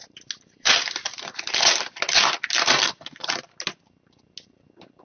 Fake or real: real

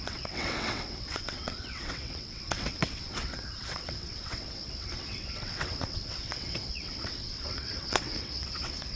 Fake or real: fake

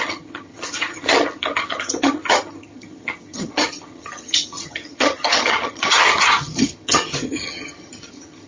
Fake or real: fake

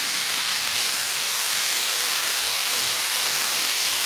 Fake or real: fake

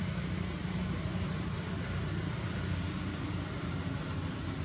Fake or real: real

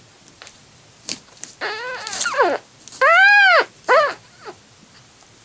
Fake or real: real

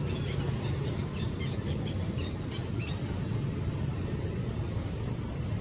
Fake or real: real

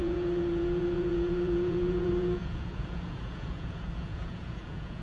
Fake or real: fake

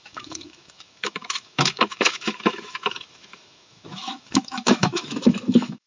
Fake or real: fake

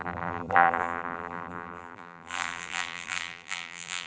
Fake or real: fake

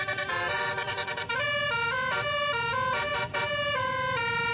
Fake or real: fake